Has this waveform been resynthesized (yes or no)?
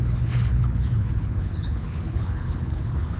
yes